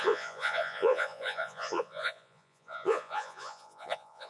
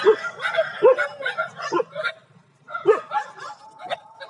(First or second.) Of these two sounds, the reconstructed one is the first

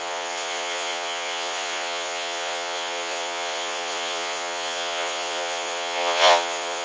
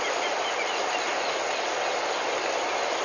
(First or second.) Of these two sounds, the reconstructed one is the first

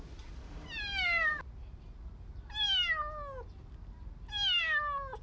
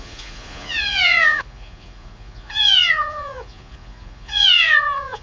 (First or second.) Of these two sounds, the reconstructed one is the second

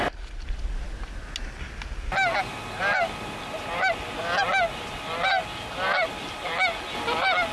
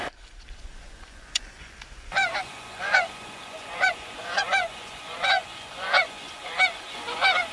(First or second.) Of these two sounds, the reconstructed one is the second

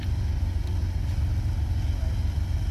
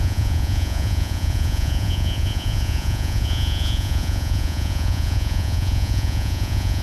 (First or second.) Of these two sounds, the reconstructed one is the second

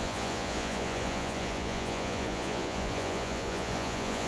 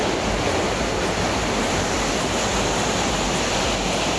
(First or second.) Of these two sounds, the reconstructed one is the first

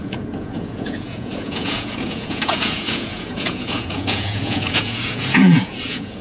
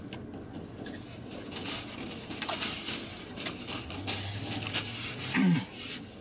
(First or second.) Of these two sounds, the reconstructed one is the first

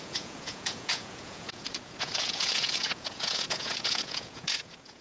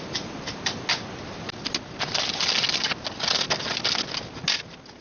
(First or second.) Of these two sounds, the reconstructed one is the first